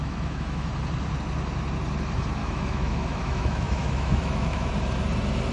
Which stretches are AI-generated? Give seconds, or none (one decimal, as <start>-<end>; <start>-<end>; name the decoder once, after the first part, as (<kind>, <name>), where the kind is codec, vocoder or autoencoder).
0.0-0.7 (autoencoder, DAC-VAE); 2.4-4.7